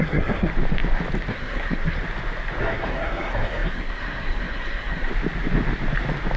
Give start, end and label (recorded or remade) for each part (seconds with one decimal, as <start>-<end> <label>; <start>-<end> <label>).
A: 0.0-0.5 remade; 0.5-1.3 recorded; 1.3-2.0 remade; 2.0-2.6 recorded; 2.6-5.1 remade; 5.1-6.4 recorded